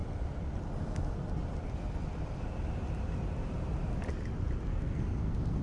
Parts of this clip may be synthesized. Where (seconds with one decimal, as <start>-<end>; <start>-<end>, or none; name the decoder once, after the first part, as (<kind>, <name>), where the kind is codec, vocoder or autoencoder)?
4.7-5.6 (codec, SNAC)